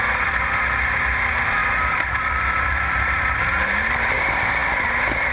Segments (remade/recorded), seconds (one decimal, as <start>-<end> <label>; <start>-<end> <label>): 0.0-4.6 remade; 4.6-5.3 recorded